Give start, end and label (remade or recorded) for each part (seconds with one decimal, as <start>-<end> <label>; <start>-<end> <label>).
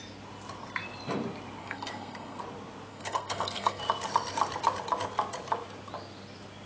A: 0.0-1.6 recorded; 1.6-2.4 remade; 2.4-2.9 recorded; 2.9-3.8 remade; 3.8-6.7 recorded